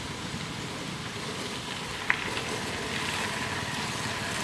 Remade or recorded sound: recorded